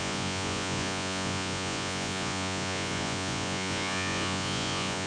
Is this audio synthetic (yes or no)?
yes